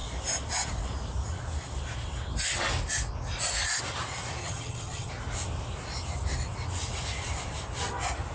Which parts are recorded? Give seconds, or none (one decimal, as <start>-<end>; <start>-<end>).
0.0-4.4; 5.1-8.3